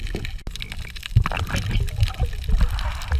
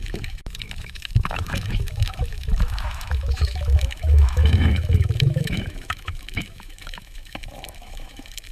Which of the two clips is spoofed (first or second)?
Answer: second